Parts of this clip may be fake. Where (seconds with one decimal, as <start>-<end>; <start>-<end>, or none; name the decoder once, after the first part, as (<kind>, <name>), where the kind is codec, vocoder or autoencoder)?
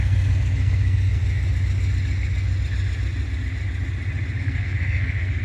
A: 0.0-1.2 (codec, SNAC); 4.4-5.4